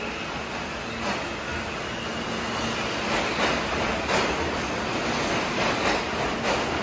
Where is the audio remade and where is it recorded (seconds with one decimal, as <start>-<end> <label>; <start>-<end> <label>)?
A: 0.0-6.8 recorded